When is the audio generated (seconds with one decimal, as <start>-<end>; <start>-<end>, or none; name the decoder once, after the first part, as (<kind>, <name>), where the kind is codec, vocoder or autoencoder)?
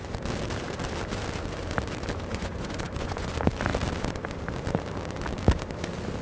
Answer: 2.3-3.3 (vocoder, Vocos)